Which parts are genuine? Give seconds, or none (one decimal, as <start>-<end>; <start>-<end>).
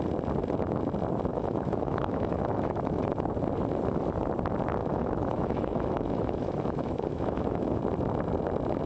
0.0-1.3; 3.0-4.8; 7.8-8.9